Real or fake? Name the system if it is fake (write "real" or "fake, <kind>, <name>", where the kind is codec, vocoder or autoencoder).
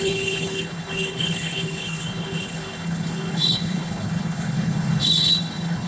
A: fake, codec, HILCodec